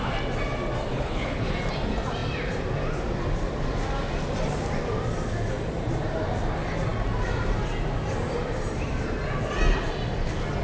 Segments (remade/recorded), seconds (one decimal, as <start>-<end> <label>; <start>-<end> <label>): 0.0-0.9 recorded; 0.9-1.5 remade; 1.5-10.6 recorded